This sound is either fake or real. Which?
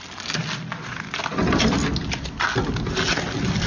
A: real